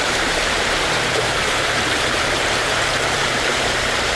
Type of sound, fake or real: fake